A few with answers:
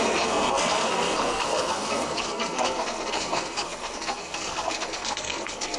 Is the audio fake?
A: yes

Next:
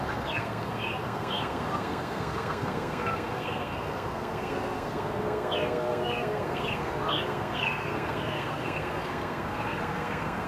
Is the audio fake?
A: yes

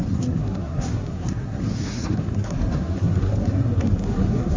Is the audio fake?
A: yes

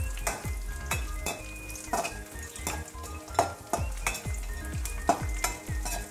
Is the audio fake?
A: no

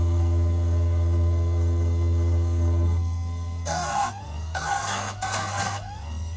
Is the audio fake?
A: yes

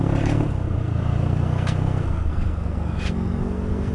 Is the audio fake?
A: yes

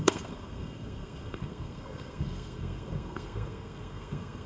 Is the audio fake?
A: yes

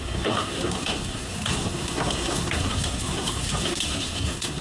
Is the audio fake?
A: yes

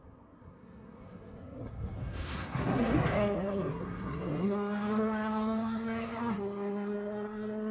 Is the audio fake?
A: yes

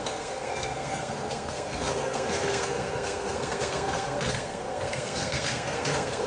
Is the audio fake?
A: yes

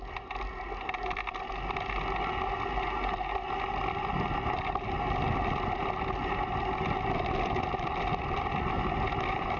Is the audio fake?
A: no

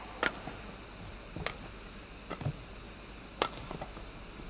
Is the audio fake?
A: no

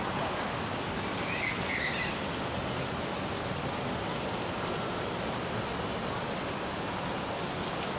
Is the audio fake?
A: no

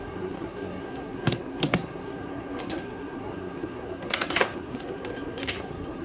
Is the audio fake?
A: yes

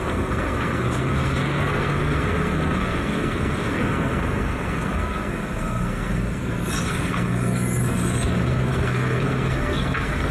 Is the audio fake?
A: yes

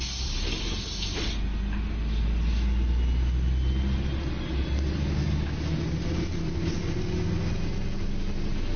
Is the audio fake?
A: no